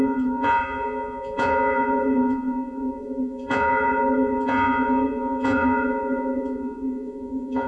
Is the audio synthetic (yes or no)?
yes